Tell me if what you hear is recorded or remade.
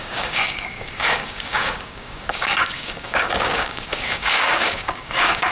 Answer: remade